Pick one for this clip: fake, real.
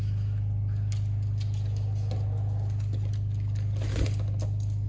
real